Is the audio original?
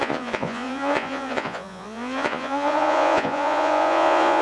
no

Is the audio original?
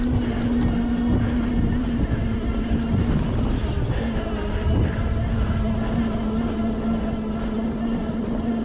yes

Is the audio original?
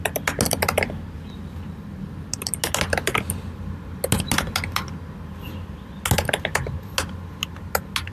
yes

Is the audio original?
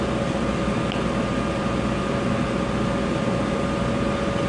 yes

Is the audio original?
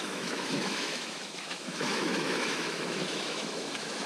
no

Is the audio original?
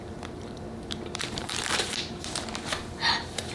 no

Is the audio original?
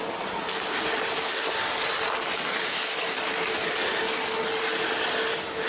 yes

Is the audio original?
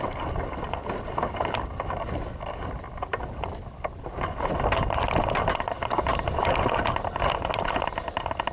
yes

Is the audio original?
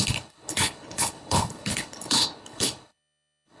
no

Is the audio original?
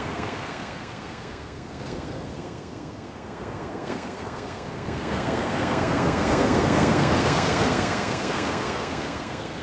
no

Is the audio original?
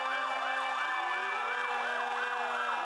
yes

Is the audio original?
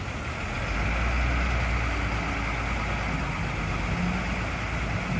yes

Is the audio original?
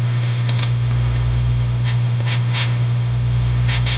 no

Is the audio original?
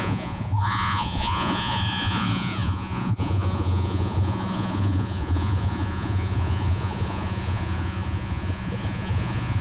no